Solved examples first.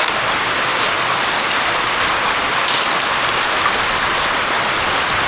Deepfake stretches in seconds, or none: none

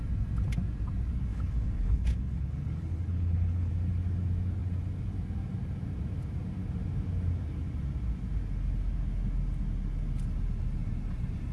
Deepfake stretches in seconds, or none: 1.3-3.7 (codec, HILCodec)

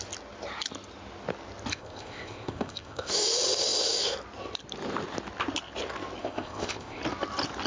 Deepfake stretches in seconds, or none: 1.7-3.1 (codec, ZipCodec); 6.2-7.0

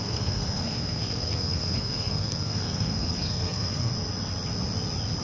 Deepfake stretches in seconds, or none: 0.0-3.9 (codec, SNAC)

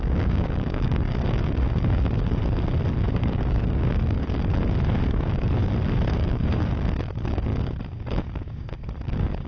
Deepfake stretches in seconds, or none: 0.0-2.4 (codec, DAC); 3.0-5.6; 6.1-9.5

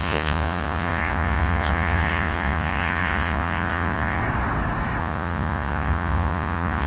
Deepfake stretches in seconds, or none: 0.0-4.2 (vocoder, Vocos); 5.0-6.9

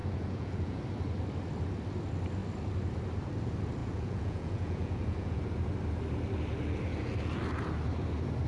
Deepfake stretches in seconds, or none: 0.0-0.8 (vocoder, Vocos); 3.8-5.4

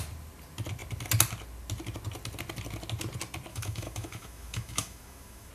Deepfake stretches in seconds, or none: 3.5-5.5 (autoencoder, DAC-VAE)